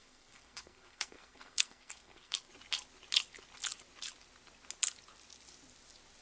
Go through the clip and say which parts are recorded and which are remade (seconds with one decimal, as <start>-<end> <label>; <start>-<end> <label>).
0.0-2.5 remade; 2.5-6.2 recorded